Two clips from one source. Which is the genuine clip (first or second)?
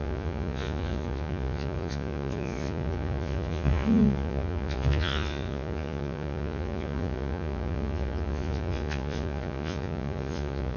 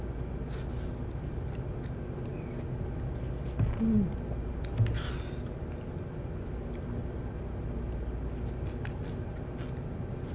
second